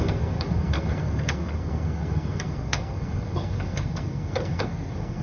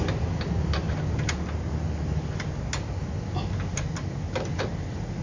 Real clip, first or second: second